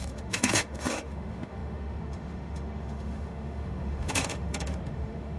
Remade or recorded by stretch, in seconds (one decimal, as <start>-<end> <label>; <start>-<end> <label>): 0.0-5.4 remade